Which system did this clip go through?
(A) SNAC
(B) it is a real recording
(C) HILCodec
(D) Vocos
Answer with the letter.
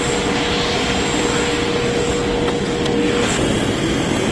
B